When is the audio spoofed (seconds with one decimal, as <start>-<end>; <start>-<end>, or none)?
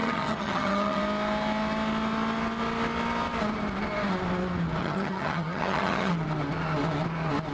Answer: 0.0-1.0; 4.8-6.1